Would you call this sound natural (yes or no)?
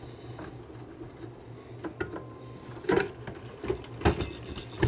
yes